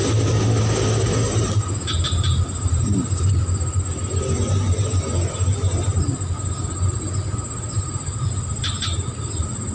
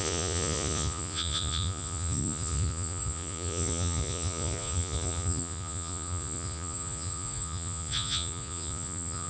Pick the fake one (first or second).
second